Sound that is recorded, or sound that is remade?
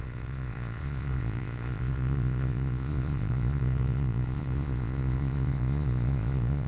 remade